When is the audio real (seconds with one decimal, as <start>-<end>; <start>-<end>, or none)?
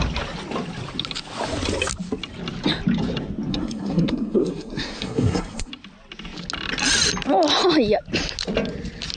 0.0-3.5; 5.7-9.2